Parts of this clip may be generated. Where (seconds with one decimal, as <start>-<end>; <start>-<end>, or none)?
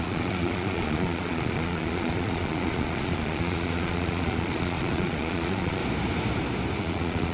0.0-5.8; 6.8-7.3